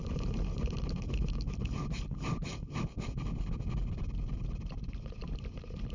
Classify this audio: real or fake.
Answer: real